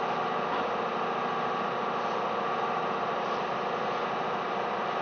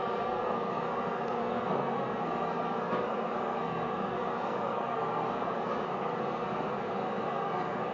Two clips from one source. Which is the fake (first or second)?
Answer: second